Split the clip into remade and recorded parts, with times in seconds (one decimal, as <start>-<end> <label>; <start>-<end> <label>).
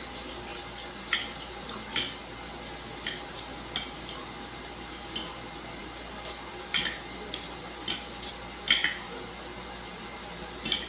0.0-10.9 recorded